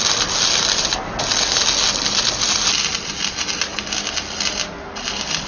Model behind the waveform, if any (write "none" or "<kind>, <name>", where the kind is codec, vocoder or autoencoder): none